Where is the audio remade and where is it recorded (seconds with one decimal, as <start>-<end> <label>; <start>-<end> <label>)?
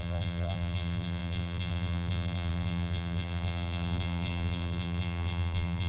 0.0-5.9 remade